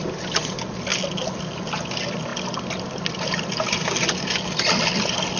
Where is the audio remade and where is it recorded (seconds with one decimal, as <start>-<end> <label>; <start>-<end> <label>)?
0.0-5.4 recorded